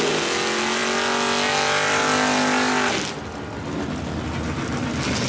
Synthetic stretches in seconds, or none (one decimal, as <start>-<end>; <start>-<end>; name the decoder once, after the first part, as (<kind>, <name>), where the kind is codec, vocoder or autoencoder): none